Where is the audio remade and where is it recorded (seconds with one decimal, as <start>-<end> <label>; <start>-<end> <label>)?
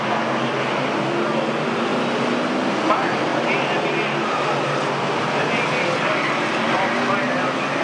0.0-7.8 recorded